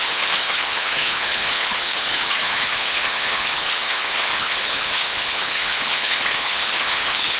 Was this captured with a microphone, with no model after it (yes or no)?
no